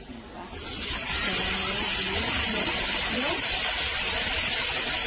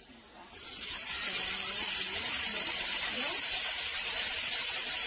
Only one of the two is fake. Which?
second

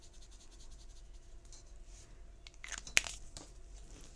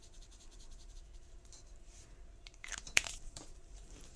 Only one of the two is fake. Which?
second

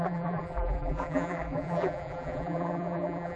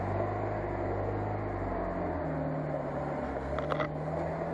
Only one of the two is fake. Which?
first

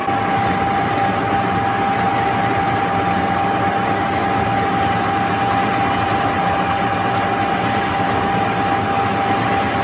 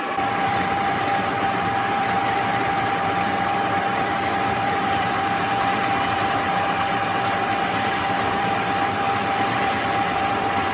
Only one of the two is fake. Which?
second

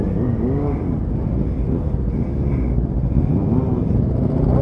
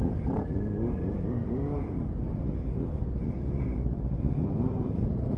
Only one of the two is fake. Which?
second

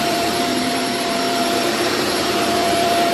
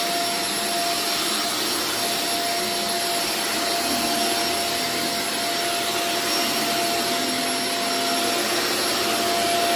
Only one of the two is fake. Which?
first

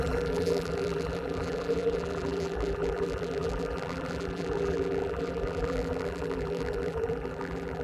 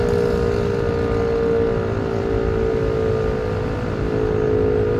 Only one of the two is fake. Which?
first